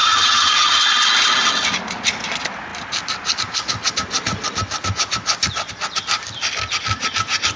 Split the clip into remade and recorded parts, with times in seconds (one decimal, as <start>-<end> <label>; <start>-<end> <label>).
0.0-0.8 remade; 0.8-7.6 recorded